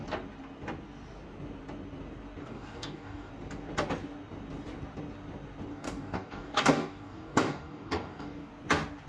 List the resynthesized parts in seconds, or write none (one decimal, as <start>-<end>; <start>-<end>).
2.4-3.3; 5.7-8.5